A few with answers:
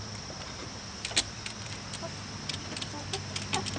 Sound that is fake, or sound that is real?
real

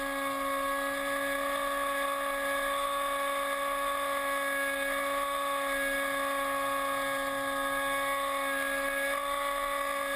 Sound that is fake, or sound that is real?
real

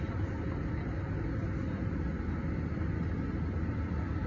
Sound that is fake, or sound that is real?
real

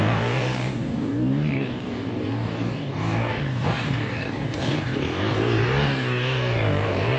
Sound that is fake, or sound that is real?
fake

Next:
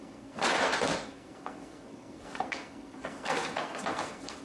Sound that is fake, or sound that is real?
fake